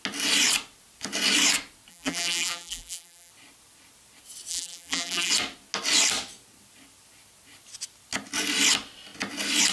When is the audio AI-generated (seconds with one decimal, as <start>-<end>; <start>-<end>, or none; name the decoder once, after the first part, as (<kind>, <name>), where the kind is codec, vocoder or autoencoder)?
1.9-3.3 (vocoder, BigVGAN v2); 4.5-5.3